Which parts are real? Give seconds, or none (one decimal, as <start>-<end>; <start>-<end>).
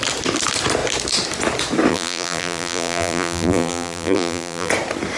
0.0-1.9; 4.7-5.2